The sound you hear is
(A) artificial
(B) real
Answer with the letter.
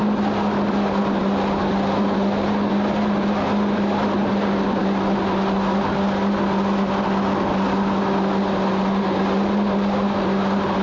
B